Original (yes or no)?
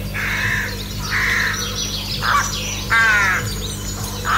yes